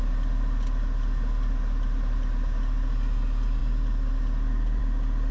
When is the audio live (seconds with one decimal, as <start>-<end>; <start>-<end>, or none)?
0.0-5.3